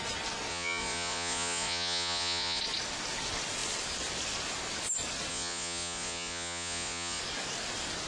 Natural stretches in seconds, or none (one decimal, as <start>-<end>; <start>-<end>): 0.0-0.5; 2.6-5.3; 7.2-8.1